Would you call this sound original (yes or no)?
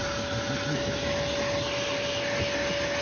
yes